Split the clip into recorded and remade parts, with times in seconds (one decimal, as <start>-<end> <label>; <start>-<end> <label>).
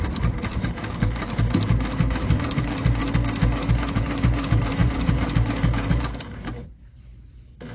0.0-3.0 remade; 3.0-3.7 recorded; 3.7-7.7 remade